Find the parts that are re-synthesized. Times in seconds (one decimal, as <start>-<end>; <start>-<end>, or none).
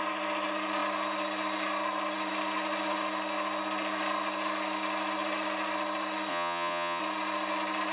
6.3-7.0